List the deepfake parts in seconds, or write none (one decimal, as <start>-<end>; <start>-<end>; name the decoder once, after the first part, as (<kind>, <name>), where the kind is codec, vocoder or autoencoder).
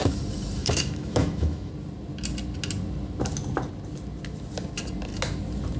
0.6-1.7 (autoencoder, DAC-VAE)